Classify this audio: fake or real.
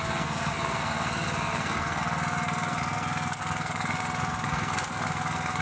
fake